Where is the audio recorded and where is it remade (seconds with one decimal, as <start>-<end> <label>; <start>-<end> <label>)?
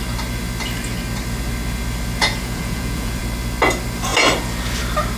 0.0-2.2 recorded; 2.2-3.2 remade; 3.2-5.2 recorded